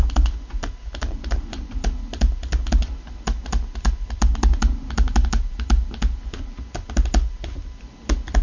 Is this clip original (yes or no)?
yes